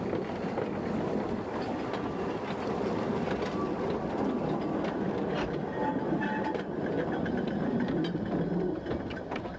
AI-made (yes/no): no